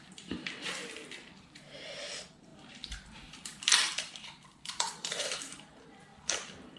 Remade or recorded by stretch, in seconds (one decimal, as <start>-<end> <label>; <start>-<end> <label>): 0.0-0.8 remade; 0.8-1.4 recorded; 1.4-6.1 remade; 6.1-6.8 recorded

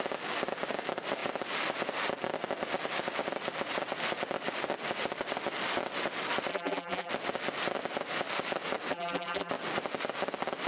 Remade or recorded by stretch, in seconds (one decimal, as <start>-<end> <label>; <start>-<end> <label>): 0.0-6.5 recorded; 6.5-7.1 remade; 7.1-8.9 recorded; 8.9-9.5 remade; 9.5-10.7 recorded

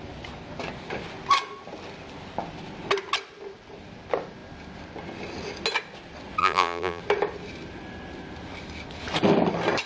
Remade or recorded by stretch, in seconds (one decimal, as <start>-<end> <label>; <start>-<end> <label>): 0.0-6.4 recorded; 6.4-7.0 remade; 7.0-9.9 recorded

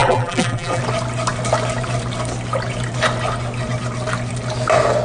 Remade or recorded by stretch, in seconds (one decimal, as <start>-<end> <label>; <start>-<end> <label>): 0.0-0.8 remade; 0.8-5.0 recorded

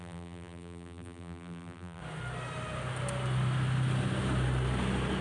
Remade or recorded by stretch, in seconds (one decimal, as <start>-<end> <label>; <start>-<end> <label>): 0.0-2.0 remade; 2.0-5.2 recorded

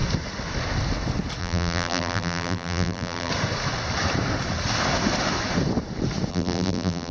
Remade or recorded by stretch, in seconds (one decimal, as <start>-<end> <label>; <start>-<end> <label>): 0.0-1.4 recorded; 1.4-3.3 remade; 3.3-6.3 recorded; 6.3-7.1 remade